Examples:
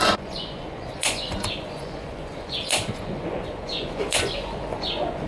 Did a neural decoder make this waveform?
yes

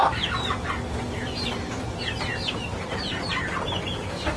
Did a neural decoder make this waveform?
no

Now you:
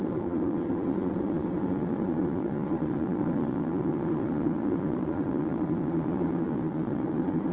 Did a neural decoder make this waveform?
yes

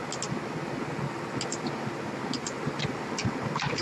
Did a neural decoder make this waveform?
no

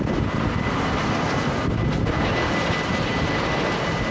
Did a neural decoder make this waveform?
no